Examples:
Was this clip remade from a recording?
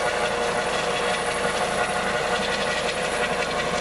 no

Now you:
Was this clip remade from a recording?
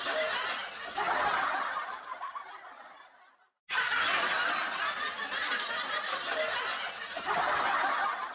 no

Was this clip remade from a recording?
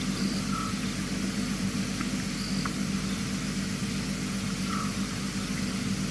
no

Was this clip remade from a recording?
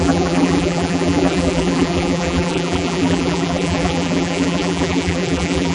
yes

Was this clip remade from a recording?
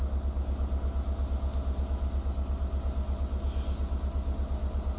no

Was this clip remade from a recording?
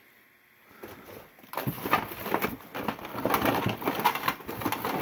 no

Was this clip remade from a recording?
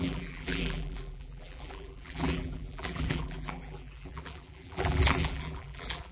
yes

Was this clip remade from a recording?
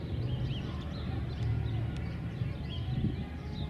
no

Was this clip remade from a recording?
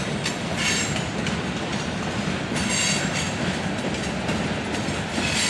no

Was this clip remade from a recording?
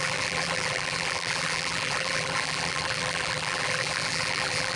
yes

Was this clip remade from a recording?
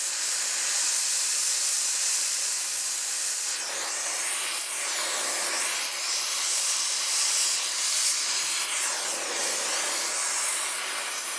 no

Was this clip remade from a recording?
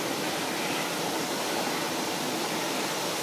no